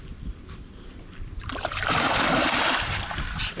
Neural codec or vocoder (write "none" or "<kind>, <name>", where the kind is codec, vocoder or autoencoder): vocoder, BigVGAN v2